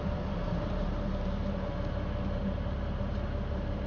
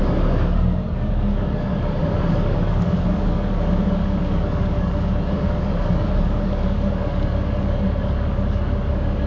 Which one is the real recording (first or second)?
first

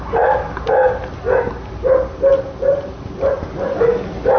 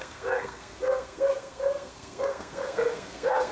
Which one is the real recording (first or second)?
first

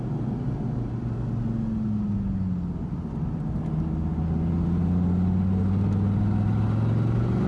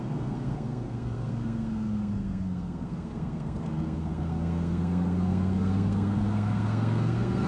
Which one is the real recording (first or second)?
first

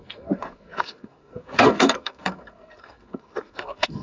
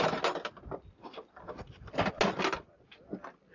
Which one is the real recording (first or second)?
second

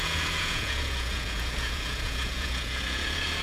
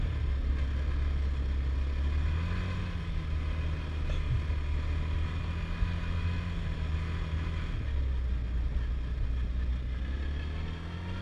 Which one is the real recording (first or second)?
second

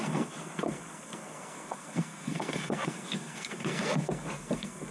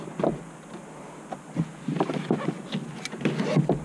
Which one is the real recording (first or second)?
second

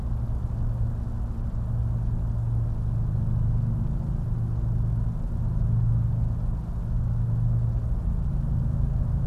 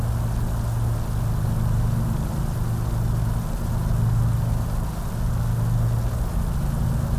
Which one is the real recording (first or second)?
first